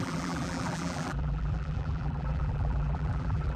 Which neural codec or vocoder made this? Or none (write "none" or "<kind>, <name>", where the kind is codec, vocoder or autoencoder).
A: vocoder, BigVGAN v2